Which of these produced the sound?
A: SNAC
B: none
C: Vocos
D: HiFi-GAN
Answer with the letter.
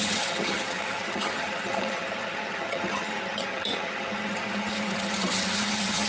D